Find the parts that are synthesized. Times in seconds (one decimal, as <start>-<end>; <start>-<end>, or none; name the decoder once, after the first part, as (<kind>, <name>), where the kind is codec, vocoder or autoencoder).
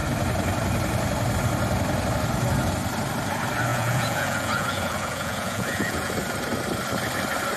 3.7-6.1 (vocoder, Vocos)